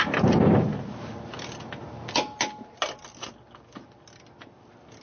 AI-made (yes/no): no